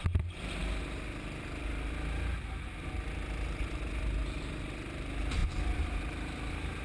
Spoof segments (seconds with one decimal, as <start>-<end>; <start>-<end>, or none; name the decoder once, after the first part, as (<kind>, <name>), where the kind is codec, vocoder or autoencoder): none

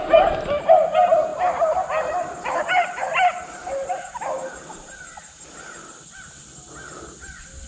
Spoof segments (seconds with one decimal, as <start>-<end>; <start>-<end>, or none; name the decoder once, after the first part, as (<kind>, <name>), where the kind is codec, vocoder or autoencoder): none

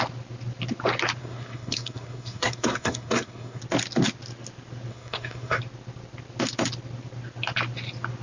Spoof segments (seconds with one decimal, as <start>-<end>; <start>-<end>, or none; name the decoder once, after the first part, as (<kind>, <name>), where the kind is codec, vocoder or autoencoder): 1.2-3.6 (codec, SNAC); 4.9-5.6

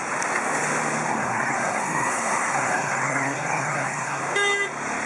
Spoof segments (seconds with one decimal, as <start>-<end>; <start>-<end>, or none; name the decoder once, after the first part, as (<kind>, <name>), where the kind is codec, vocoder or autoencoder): 1.1-4.2 (codec, SNAC)

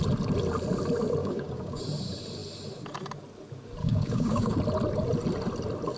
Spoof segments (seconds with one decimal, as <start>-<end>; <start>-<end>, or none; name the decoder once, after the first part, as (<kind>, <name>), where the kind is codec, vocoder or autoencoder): 1.2-1.8 (codec, DAC); 3.8-4.6

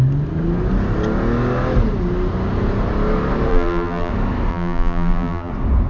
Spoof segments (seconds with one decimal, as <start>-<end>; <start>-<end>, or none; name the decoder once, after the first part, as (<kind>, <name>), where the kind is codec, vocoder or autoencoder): 3.5-4.1 (vocoder, BigVGAN v2); 4.5-5.5